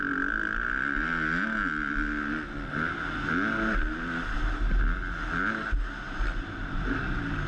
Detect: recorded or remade recorded